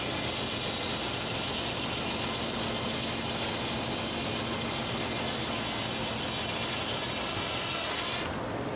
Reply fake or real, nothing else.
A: real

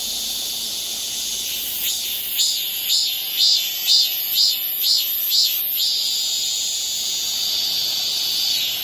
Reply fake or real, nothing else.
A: fake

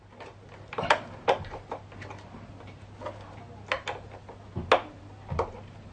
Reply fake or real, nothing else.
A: real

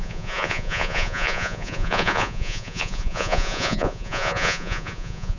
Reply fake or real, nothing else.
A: fake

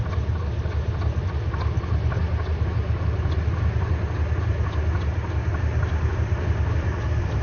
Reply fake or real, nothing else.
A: real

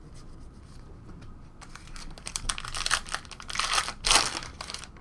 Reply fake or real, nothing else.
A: real